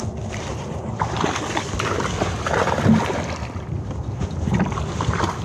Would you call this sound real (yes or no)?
yes